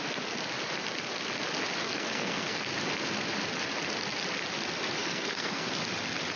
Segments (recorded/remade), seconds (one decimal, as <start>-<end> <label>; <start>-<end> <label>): 0.0-1.8 recorded; 1.8-2.7 remade; 2.7-5.0 recorded; 5.0-5.7 remade; 5.7-6.4 recorded